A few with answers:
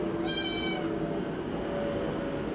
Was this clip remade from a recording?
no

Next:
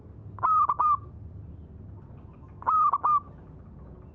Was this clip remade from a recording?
no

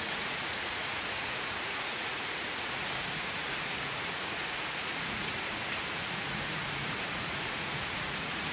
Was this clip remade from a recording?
yes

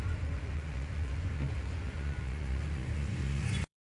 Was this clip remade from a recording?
yes